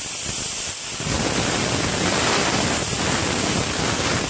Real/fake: real